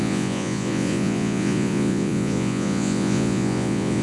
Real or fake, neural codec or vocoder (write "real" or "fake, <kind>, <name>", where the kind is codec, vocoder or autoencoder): fake, vocoder, Vocos